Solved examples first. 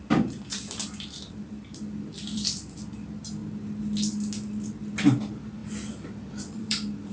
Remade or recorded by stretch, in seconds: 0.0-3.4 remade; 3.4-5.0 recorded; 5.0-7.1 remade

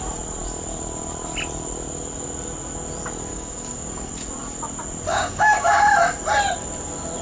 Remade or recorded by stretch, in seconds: 0.0-3.3 recorded; 3.3-4.1 remade; 4.1-5.1 recorded; 5.1-5.8 remade; 5.8-7.2 recorded

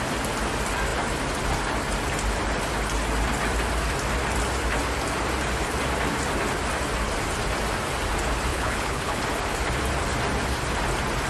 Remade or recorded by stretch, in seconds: 0.0-8.5 recorded; 8.5-9.2 remade; 9.2-11.3 recorded

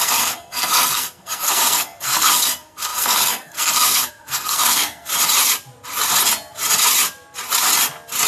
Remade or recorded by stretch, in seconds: 0.0-5.1 remade; 5.1-8.3 recorded

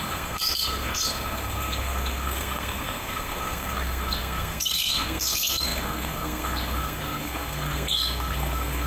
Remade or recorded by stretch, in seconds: 0.0-8.9 remade

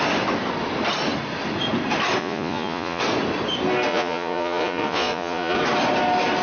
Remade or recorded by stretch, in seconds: 0.0-2.2 recorded; 2.2-3.0 remade; 3.0-3.9 recorded; 3.9-5.6 remade; 5.6-6.4 recorded